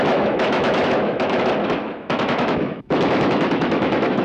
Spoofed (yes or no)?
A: yes